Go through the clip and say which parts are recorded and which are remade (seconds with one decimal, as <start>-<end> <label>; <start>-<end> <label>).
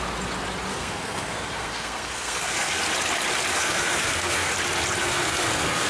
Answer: 0.0-0.7 recorded; 0.7-2.8 remade; 2.8-3.5 recorded; 3.5-4.5 remade; 4.5-5.0 recorded; 5.0-5.9 remade